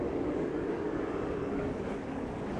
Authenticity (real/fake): fake